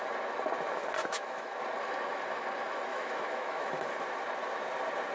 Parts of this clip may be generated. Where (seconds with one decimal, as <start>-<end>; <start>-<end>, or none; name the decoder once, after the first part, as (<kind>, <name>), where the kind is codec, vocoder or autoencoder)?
1.0-1.6 (autoencoder, DAC-VAE); 2.9-3.9